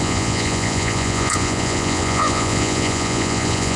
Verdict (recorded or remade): remade